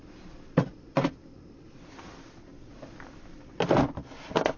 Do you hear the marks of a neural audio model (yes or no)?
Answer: no